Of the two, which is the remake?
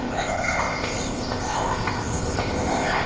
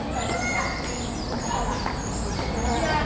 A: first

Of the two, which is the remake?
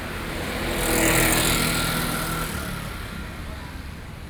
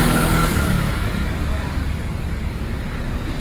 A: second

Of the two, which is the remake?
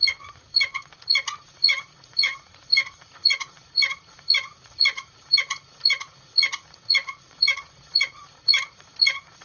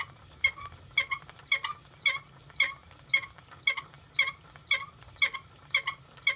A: first